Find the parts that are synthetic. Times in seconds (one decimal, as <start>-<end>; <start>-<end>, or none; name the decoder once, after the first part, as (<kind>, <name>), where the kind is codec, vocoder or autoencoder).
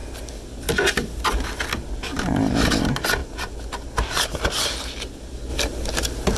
none